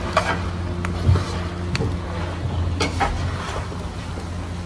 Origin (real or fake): real